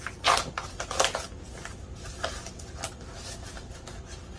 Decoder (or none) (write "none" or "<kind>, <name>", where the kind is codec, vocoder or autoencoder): none